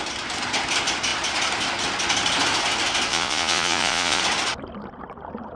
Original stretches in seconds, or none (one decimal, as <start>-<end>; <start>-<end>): 0.0-3.1; 4.2-5.6